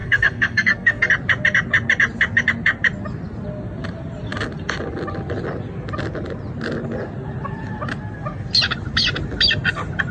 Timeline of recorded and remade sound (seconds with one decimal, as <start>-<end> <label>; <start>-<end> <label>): 0.0-1.1 remade; 1.1-10.1 recorded